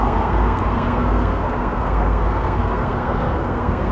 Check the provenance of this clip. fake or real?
fake